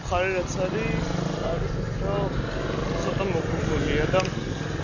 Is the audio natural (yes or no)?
yes